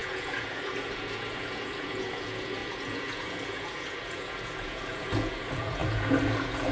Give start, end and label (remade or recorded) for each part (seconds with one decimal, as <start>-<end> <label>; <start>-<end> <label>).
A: 0.0-6.7 remade